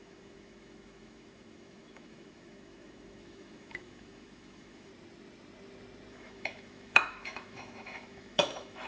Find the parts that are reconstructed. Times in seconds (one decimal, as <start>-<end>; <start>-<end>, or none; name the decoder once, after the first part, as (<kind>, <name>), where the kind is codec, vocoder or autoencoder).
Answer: 0.0-4.9 (autoencoder, DAC-VAE); 6.1-8.9